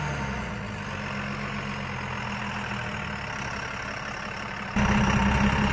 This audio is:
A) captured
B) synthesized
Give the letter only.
A